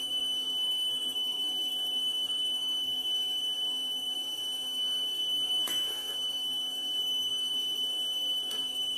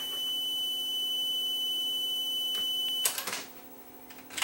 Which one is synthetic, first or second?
first